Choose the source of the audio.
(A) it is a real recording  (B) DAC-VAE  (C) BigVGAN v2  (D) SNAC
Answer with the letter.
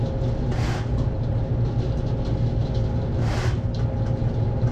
A